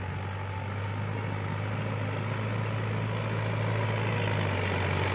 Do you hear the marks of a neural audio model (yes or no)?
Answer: no